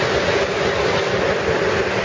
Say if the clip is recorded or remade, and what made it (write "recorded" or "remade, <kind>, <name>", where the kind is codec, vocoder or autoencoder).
recorded